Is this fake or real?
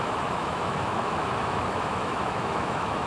fake